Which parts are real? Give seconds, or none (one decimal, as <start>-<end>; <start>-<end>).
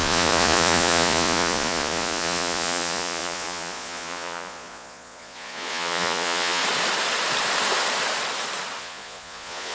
6.6-8.8